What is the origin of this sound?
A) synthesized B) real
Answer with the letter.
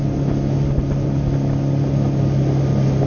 B